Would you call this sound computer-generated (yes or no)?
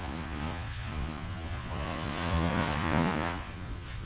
yes